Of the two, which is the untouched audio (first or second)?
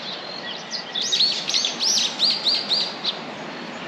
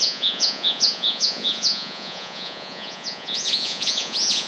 first